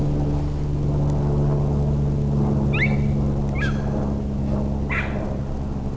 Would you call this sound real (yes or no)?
yes